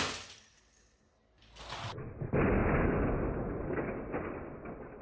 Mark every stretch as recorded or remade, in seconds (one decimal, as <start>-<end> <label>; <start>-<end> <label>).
0.0-5.0 recorded